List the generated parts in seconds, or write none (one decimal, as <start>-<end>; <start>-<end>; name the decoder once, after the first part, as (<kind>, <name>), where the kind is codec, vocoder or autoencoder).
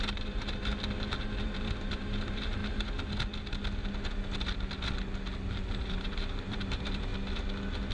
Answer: 0.0-0.7 (vocoder, BigVGAN v2); 1.4-2.6; 5.5-7.1